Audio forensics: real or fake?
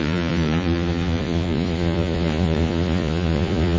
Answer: fake